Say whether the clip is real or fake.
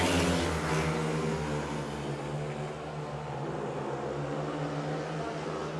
real